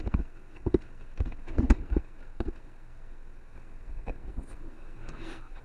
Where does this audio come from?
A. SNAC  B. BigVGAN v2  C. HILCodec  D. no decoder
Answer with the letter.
A